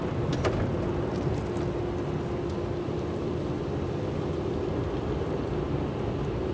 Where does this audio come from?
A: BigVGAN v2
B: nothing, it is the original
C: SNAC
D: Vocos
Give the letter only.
B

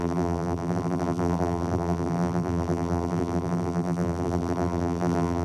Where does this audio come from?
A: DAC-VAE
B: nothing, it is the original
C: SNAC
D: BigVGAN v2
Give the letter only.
D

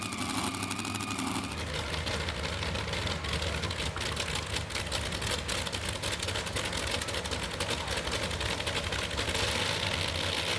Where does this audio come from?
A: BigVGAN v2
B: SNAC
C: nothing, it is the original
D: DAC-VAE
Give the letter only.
C